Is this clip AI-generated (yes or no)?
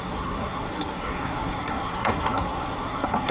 yes